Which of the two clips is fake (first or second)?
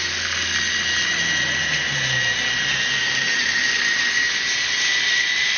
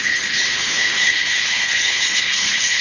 second